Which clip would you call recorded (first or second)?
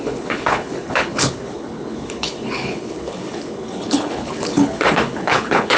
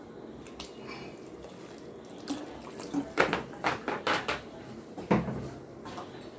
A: second